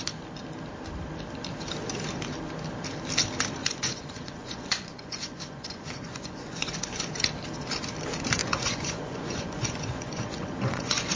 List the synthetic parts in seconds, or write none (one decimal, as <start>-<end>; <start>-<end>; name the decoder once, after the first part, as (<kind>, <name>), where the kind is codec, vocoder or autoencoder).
3.6-7.1 (vocoder, Vocos); 8.4-11.2